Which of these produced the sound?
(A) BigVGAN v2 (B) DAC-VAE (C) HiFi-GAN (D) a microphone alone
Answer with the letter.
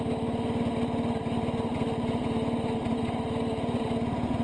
D